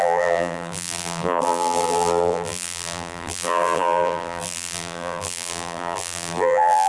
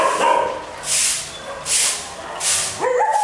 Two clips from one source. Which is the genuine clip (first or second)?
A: second